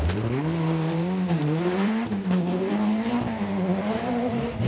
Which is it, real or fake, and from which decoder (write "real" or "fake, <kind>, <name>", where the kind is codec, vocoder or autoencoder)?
fake, vocoder, BigVGAN v2